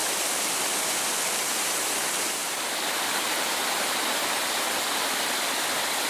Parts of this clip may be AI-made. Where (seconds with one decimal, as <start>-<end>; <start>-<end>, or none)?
0.0-1.7; 2.4-6.1